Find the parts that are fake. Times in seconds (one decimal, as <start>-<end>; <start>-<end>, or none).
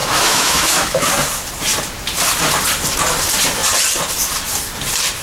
0.0-1.1